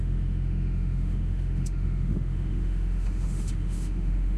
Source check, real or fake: fake